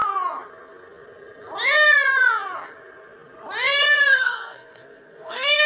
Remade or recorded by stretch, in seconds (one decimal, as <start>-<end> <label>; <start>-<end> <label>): 0.0-4.1 recorded; 4.1-5.7 remade